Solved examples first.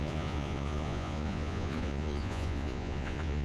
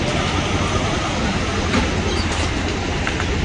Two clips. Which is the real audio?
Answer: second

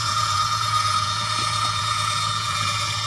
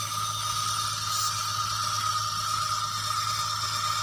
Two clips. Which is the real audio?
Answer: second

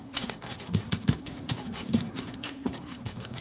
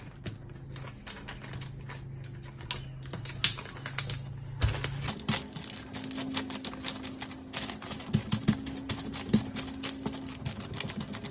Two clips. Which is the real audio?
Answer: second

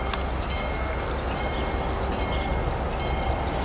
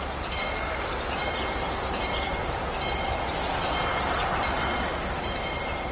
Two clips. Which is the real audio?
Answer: first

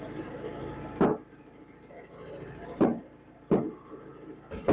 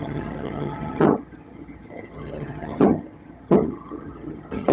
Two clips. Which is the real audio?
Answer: first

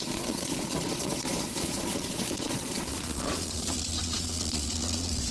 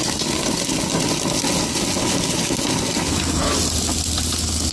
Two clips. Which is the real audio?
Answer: second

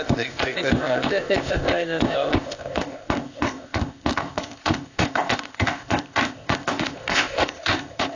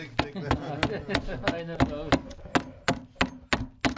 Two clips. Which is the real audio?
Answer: second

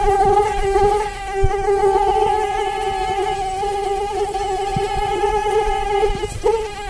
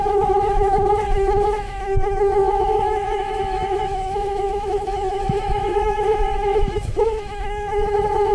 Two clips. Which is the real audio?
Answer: first